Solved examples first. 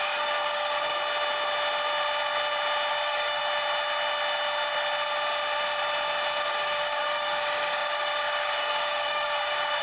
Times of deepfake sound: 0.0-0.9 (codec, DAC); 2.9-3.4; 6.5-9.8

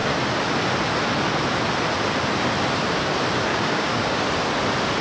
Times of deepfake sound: 3.5-4.2 (codec, DAC)

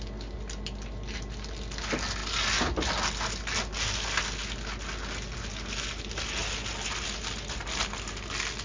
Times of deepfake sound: none

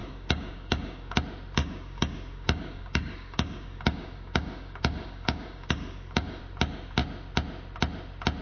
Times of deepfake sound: 0.0-1.2 (codec, DAC); 1.6-6.4

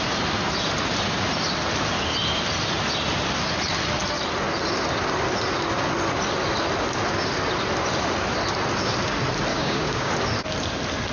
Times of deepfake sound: 9.5-10.1 (codec, DAC)

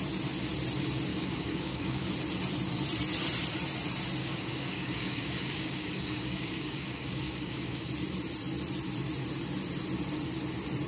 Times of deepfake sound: 1.1-2.1 (codec, DAC); 4.2-7.9

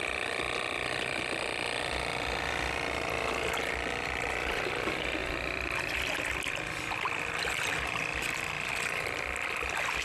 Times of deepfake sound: none

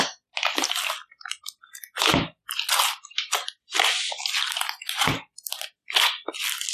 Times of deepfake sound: none